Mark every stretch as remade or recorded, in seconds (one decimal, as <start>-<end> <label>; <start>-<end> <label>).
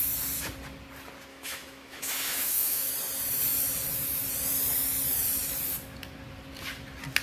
0.0-1.3 recorded; 1.3-2.9 remade; 2.9-7.2 recorded